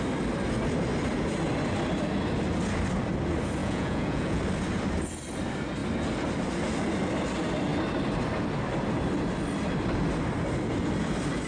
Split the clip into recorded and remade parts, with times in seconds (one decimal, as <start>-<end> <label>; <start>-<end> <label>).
0.0-3.6 recorded; 3.6-4.4 remade; 4.4-11.5 recorded